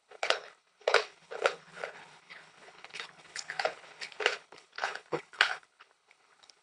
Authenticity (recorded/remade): remade